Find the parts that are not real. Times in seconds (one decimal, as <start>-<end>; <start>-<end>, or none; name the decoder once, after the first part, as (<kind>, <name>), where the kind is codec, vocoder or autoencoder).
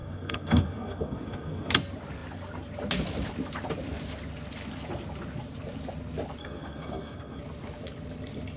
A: 0.0-1.7 (codec, SNAC); 6.4-7.4